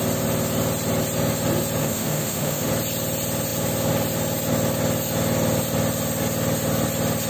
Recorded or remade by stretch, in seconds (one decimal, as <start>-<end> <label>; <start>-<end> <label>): 0.0-1.8 recorded; 1.8-2.7 remade; 2.7-7.3 recorded